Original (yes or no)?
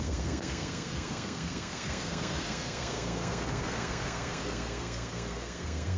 no